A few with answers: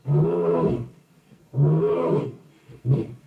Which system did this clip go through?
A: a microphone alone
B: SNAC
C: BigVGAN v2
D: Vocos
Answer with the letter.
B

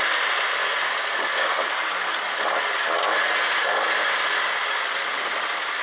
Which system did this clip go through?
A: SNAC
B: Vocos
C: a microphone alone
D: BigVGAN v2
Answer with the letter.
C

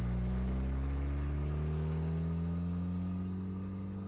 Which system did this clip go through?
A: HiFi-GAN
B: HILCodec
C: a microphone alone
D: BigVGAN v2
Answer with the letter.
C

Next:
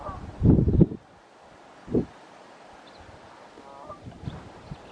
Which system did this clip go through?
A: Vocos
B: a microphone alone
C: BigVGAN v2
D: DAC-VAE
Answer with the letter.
B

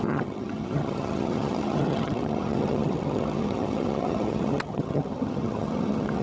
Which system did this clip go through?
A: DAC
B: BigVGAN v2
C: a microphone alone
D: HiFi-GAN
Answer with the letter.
D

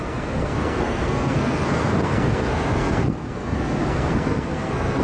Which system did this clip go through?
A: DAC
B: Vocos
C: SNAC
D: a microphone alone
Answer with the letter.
C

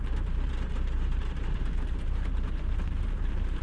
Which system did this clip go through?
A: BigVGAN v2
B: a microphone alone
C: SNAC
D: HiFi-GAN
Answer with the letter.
A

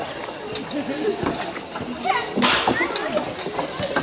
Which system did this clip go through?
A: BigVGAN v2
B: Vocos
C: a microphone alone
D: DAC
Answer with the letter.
C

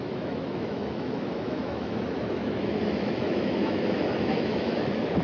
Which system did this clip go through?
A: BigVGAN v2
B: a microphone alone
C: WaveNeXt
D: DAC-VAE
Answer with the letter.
D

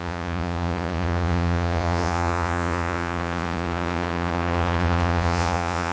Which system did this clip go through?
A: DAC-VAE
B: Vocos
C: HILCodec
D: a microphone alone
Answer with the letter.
B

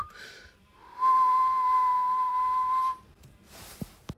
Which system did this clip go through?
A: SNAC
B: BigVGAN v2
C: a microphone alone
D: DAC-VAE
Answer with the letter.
B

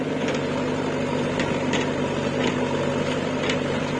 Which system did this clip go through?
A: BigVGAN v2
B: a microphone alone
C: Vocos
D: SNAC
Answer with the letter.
B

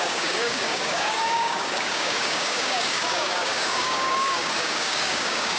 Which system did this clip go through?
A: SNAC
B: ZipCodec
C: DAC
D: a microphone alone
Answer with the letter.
C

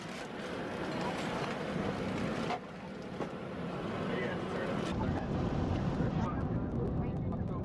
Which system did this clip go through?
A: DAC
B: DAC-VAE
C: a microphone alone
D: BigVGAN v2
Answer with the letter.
C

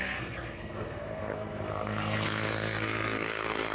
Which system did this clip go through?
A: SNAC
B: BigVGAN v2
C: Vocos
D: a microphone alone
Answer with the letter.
A